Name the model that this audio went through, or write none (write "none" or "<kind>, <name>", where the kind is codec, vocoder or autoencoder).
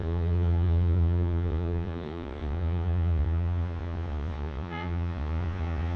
vocoder, Vocos